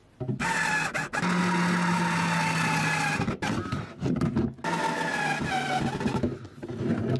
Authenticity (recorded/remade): recorded